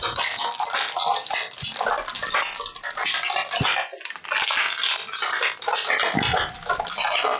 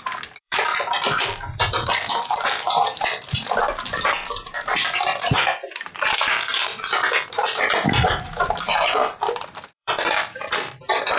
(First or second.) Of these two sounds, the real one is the first